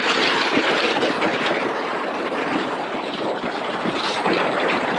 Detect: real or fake fake